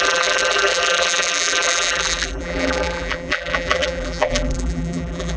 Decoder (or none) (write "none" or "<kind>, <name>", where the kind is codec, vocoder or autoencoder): vocoder, BigVGAN v2